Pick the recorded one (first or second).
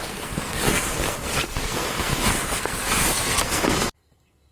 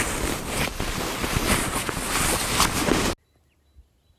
second